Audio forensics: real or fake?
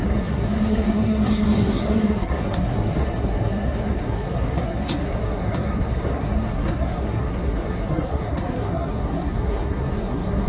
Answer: fake